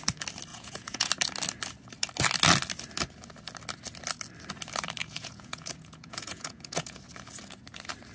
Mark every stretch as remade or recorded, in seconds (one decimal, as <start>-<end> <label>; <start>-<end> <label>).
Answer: 0.0-0.5 recorded; 0.5-1.1 remade; 1.1-5.0 recorded; 5.0-7.0 remade; 7.0-8.1 recorded